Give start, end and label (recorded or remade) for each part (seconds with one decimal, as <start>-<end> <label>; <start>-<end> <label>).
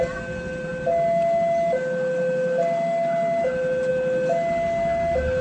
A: 0.0-5.4 recorded